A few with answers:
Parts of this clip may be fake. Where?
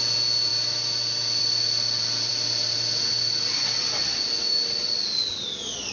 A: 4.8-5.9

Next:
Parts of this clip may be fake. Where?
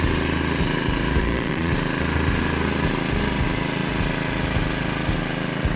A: 1.2-1.7